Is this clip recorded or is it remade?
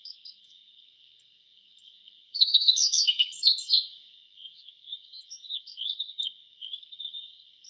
remade